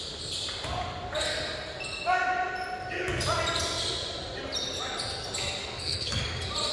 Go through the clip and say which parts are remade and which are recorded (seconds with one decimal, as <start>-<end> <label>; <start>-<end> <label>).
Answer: 0.0-5.6 recorded; 5.6-6.2 remade; 6.2-6.7 recorded